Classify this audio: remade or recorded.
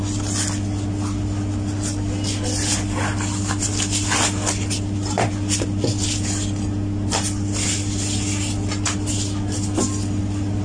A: recorded